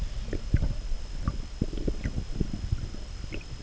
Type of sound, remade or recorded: recorded